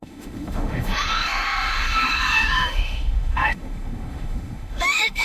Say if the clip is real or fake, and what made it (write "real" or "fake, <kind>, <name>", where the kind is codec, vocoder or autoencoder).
fake, autoencoder, DAC-VAE